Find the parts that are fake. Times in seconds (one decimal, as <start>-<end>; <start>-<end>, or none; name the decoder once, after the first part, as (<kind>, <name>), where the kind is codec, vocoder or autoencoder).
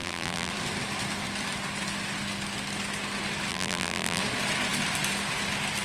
0.0-0.5 (vocoder, BigVGAN v2); 3.5-4.2